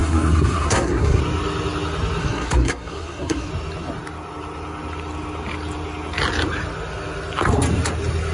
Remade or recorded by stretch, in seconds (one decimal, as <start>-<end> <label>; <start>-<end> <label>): 0.0-1.2 remade; 1.2-2.2 recorded; 2.2-3.5 remade; 3.5-8.3 recorded